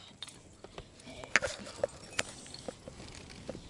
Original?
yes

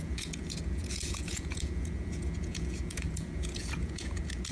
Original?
no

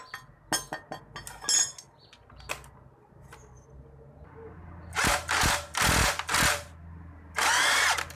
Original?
yes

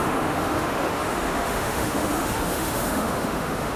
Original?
no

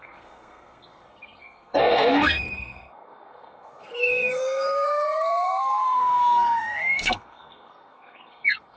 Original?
no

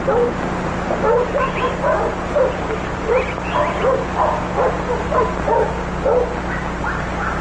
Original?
yes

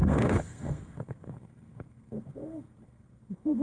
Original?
no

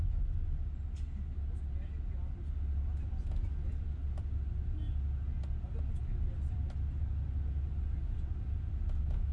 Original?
yes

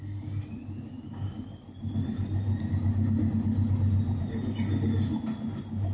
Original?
yes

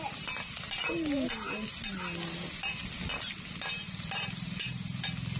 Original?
yes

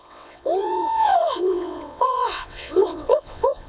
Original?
no